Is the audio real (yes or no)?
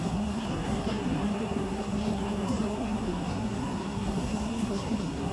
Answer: no